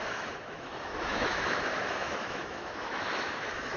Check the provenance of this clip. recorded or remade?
remade